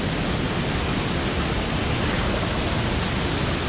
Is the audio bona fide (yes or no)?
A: yes